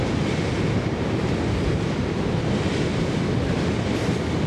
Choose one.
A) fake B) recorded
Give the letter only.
B